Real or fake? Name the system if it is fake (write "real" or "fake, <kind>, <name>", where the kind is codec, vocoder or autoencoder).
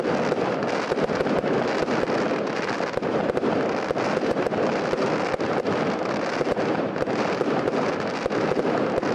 real